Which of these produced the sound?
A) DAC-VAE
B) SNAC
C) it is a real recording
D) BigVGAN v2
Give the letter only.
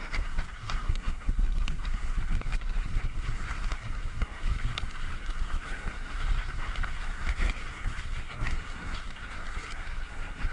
B